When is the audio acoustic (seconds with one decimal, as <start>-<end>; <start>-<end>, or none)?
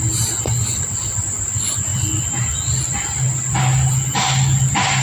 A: 0.0-5.0